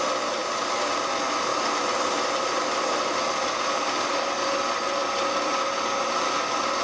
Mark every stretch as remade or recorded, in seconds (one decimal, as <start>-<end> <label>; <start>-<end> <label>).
0.0-1.5 recorded; 1.5-5.6 remade; 5.6-6.8 recorded